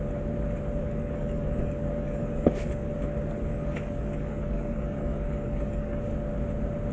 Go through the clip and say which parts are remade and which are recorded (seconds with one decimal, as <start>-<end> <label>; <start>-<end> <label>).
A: 0.0-0.8 recorded; 0.8-2.9 remade; 2.9-3.5 recorded; 3.5-6.0 remade; 6.0-6.9 recorded